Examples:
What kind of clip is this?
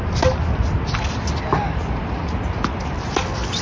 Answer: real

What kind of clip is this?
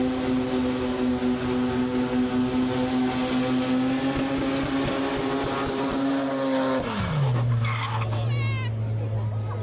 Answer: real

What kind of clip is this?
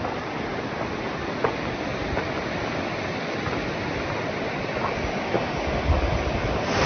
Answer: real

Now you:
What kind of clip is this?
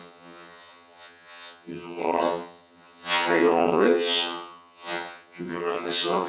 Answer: fake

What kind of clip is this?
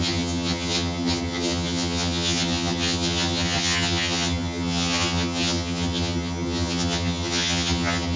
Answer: fake